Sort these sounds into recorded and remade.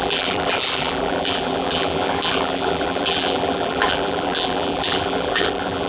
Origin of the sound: remade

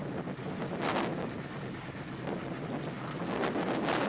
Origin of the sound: recorded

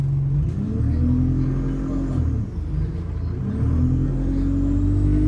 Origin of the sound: recorded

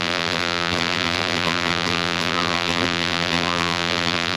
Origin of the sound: remade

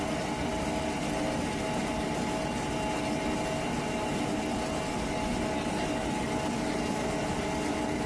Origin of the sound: recorded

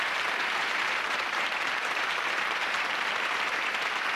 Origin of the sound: remade